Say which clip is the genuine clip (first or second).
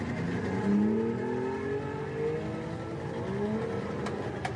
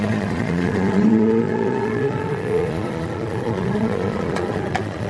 first